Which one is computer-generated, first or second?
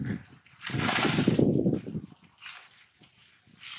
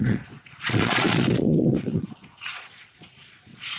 second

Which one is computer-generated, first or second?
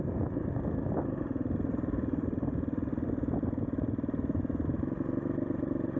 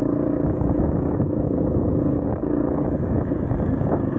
second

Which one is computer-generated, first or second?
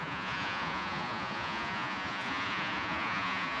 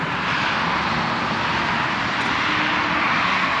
first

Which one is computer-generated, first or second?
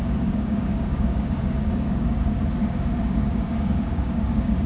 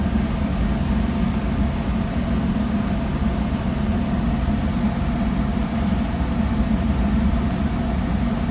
first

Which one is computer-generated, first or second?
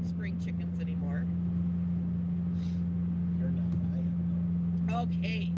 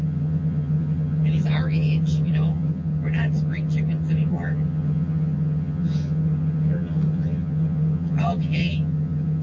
second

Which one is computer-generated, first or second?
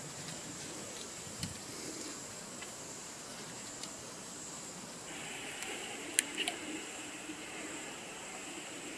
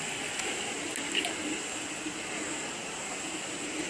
first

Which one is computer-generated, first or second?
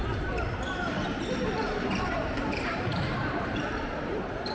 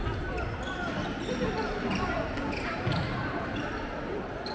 first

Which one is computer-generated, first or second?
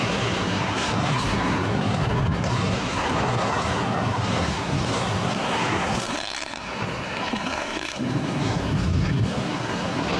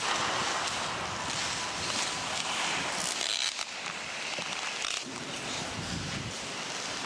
first